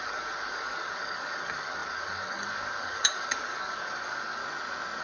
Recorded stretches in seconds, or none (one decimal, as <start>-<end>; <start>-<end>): 4.4-5.0